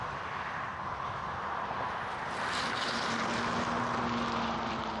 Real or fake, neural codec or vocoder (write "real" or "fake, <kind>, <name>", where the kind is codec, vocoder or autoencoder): real